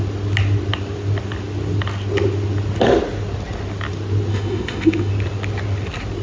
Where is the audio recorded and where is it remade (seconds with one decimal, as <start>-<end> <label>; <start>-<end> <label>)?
0.0-4.3 recorded; 4.3-5.1 remade; 5.1-6.2 recorded